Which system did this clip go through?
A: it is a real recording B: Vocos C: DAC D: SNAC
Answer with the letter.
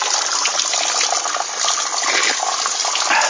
A